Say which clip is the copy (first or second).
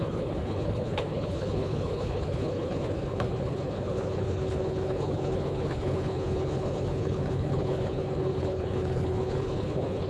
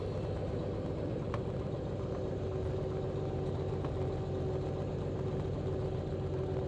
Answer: first